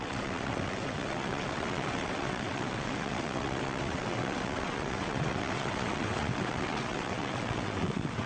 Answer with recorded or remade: remade